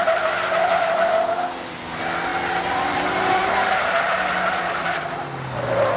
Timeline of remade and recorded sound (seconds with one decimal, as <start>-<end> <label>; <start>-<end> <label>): 0.0-6.0 recorded